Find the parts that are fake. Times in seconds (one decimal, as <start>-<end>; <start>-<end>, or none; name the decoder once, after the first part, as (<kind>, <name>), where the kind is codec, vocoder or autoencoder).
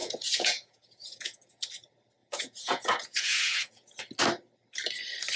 0.0-1.7 (vocoder, Vocos); 2.2-4.0